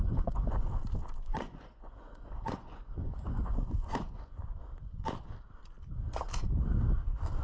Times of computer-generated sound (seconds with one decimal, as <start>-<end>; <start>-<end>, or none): 0.0-0.7; 1.3-4.4